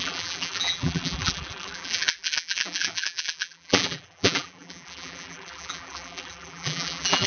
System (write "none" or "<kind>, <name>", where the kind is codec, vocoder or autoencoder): vocoder, BigVGAN v2